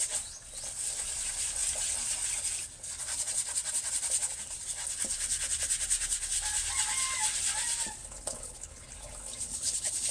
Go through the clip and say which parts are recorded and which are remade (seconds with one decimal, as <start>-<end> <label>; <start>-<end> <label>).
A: 0.0-8.0 recorded; 8.0-10.1 remade